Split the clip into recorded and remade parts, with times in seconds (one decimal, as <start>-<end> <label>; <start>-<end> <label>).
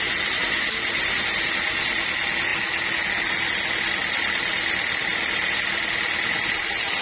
0.0-7.0 recorded